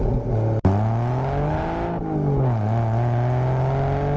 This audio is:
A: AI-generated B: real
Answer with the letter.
B